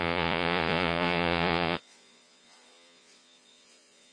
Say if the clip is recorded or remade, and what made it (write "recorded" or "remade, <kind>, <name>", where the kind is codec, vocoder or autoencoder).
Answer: remade, vocoder, Vocos